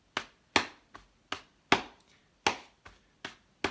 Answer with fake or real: real